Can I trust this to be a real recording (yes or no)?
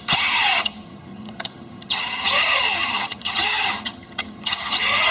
no